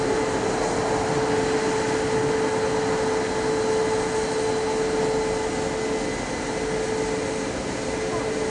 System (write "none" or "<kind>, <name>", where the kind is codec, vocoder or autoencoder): none